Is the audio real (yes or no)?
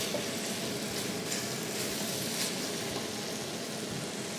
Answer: yes